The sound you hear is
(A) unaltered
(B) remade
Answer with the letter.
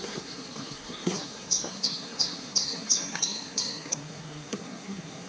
B